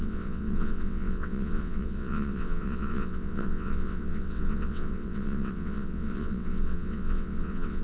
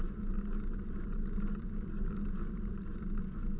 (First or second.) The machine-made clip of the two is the first